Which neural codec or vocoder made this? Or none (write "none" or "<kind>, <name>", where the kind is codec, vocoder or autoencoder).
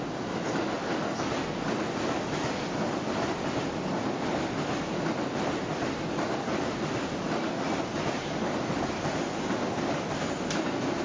none